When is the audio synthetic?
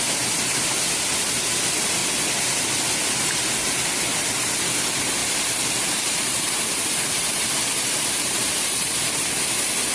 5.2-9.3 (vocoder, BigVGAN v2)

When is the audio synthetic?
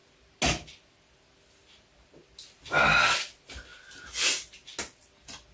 none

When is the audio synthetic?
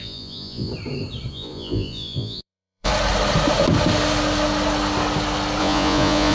0.0-0.7 (vocoder, Vocos); 1.3-2.9; 5.6-6.3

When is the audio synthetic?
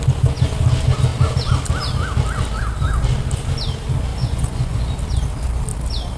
4.1-5.0 (vocoder, Vocos)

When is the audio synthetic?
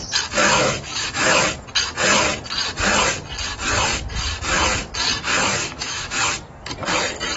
0.4-1.5 (autoencoder, DAC-VAE); 5.6-6.2